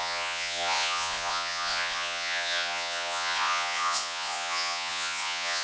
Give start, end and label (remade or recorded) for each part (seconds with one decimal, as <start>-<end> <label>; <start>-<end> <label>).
0.0-5.6 remade